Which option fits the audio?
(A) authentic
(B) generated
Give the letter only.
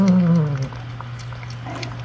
A